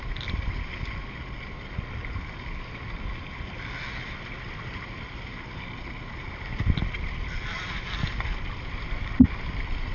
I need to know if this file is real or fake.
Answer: real